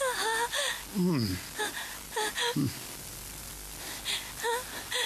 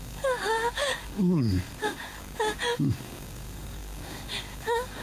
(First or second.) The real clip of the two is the first